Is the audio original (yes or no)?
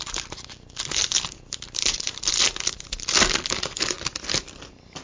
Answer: yes